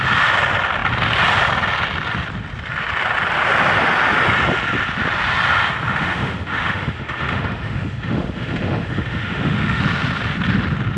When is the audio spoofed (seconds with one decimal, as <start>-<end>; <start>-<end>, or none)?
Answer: 5.9-9.8